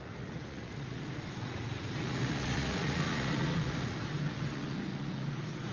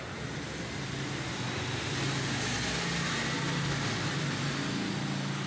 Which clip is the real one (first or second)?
second